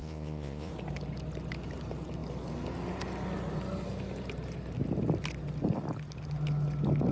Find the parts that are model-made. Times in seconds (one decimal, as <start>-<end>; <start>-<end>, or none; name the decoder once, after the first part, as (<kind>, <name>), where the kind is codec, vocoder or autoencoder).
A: 0.0-0.7 (vocoder, Vocos)